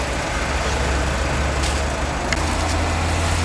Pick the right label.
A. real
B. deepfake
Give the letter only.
A